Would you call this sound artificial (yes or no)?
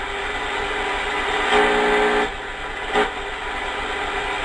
no